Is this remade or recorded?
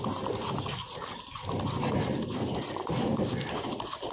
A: recorded